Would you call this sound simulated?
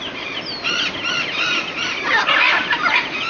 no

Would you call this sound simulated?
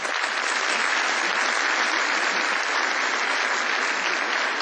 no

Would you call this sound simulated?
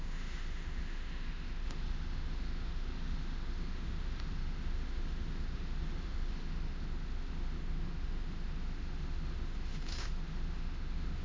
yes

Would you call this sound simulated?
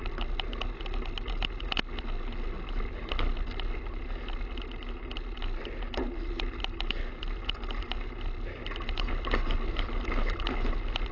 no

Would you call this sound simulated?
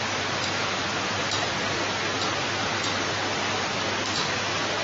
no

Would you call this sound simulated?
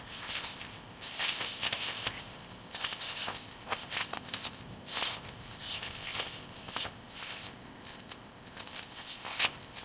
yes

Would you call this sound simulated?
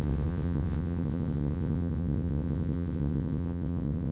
yes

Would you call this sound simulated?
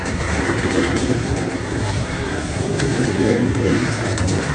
yes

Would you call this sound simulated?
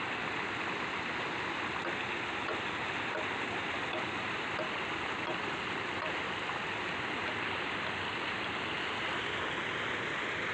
no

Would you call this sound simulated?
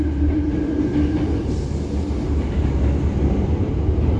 no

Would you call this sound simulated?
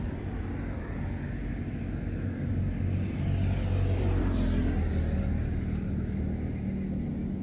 no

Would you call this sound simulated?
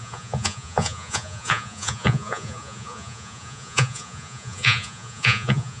yes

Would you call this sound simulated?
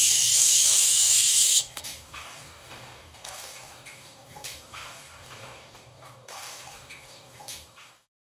yes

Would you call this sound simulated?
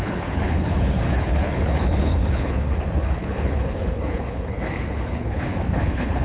yes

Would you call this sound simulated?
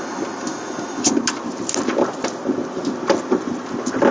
yes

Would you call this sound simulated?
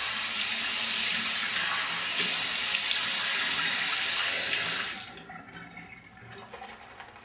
no